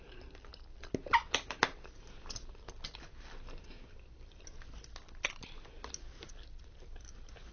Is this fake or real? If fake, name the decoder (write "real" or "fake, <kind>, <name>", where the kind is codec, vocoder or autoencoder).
real